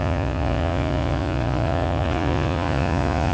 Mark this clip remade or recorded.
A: remade